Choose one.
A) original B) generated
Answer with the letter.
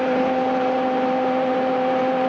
B